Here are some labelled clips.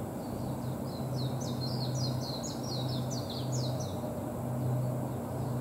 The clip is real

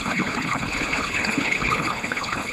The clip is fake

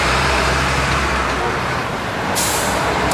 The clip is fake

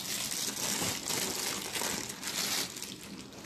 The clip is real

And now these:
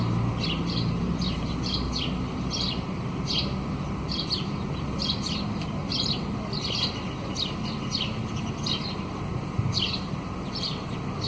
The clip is real